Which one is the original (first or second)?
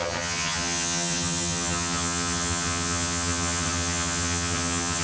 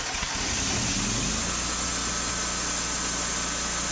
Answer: second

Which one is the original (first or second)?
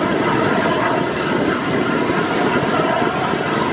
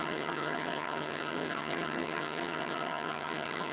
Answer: first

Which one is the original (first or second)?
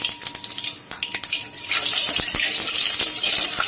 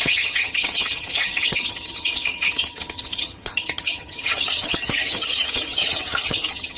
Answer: first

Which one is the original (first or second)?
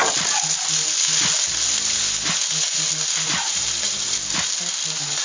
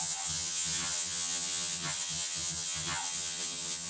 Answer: first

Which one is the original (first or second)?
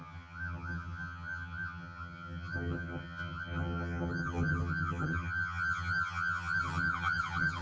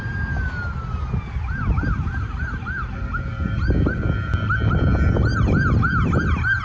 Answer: second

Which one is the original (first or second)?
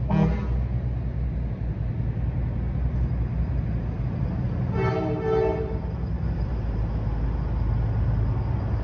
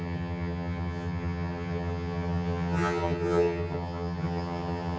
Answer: first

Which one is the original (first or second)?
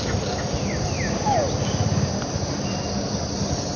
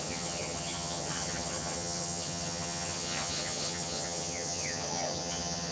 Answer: first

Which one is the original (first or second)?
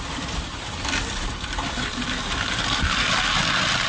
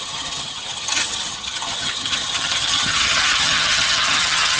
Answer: first